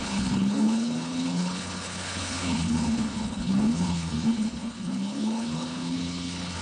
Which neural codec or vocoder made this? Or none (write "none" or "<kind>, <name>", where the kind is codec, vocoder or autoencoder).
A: codec, HILCodec